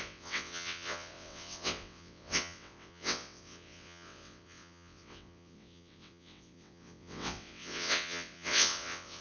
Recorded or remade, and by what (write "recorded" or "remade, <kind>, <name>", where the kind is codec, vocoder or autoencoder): remade, vocoder, WaveNeXt